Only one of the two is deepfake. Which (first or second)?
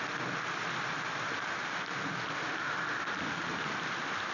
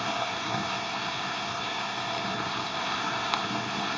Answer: second